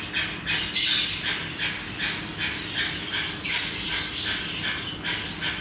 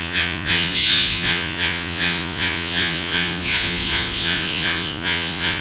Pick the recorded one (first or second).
first